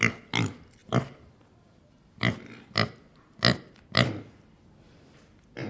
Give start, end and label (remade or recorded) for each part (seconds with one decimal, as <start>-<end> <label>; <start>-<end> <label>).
0.0-5.7 recorded

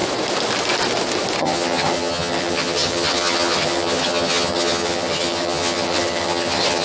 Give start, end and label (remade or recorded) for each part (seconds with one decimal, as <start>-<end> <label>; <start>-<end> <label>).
0.0-1.4 recorded; 1.4-6.8 remade

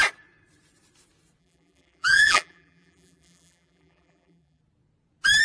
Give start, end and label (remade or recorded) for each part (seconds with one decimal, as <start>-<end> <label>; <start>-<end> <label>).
0.0-1.4 recorded; 1.4-4.6 remade; 4.6-5.4 recorded

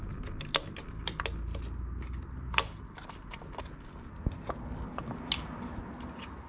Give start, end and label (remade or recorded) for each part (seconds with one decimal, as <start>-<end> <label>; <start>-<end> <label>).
0.0-6.5 recorded

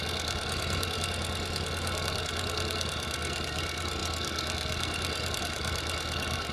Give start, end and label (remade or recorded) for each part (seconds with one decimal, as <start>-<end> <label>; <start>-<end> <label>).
0.0-6.5 remade